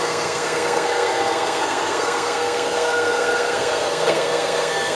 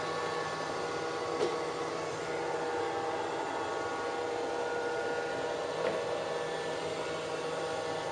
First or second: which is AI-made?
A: first